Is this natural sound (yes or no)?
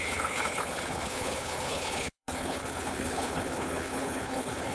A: no